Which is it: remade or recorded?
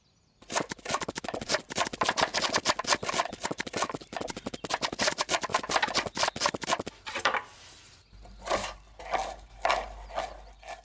recorded